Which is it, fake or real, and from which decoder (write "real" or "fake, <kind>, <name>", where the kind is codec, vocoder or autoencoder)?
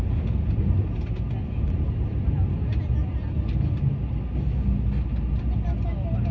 real